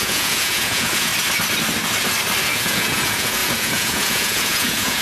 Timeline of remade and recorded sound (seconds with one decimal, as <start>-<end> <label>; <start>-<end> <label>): 0.0-1.1 remade; 1.1-2.4 recorded; 2.4-5.0 remade